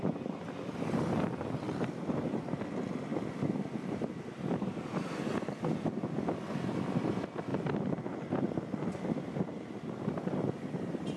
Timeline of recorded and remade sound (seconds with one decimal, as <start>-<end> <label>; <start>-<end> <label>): 0.0-11.2 recorded